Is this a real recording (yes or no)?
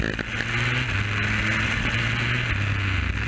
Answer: yes